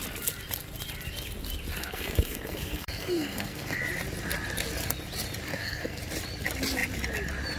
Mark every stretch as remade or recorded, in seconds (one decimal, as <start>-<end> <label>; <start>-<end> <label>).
0.0-1.8 recorded; 1.8-3.8 remade; 3.8-5.5 recorded; 5.5-6.0 remade; 6.0-7.6 recorded